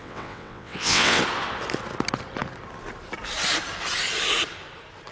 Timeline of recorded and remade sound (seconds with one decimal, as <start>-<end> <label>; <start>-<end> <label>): 0.0-1.2 remade; 1.2-5.1 recorded

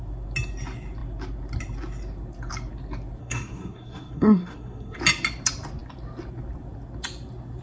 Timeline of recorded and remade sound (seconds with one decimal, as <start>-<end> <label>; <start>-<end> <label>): 0.0-3.2 recorded; 3.2-5.0 remade; 5.0-7.6 recorded

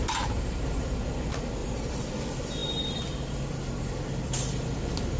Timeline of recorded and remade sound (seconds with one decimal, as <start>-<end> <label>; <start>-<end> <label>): 0.0-1.6 recorded; 1.6-2.1 remade; 2.1-5.2 recorded

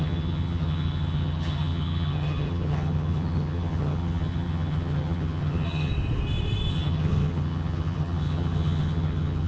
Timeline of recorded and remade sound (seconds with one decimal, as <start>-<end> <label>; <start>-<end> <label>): 0.0-5.9 remade; 5.9-6.7 recorded; 6.7-9.5 remade

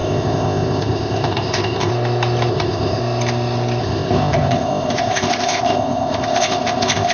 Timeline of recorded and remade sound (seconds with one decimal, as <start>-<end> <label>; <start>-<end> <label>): 0.0-1.9 remade; 1.9-2.5 recorded; 2.5-3.0 remade; 3.0-3.8 recorded; 3.8-7.1 remade

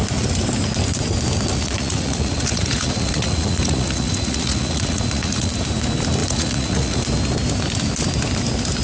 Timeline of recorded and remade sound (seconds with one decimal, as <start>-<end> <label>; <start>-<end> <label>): 0.0-1.5 recorded; 1.5-5.5 remade; 5.5-6.2 recorded; 6.2-7.0 remade; 7.0-8.8 recorded

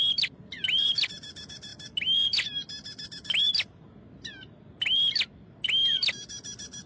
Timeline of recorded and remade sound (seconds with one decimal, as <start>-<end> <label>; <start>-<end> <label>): 0.0-6.9 recorded

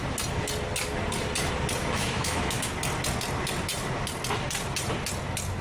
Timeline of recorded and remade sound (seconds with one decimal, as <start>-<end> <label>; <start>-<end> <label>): 0.0-1.8 recorded; 1.8-2.7 remade; 2.7-5.6 recorded